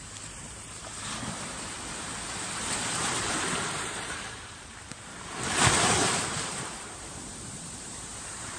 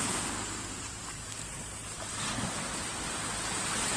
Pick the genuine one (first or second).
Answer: second